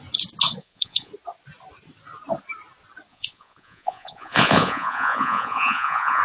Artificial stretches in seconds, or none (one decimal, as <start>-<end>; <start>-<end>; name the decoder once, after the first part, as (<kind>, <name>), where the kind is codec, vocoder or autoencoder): 0.6-1.1 (vocoder, Vocos); 3.1-6.2